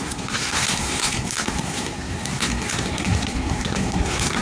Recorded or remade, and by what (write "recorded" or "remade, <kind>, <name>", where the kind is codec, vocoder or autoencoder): remade, codec, SNAC